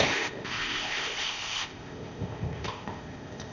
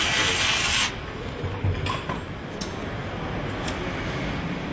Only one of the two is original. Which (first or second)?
second